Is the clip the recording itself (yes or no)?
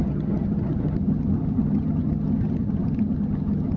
no